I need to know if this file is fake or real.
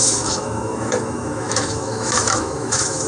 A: fake